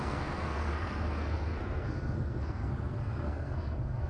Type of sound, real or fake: fake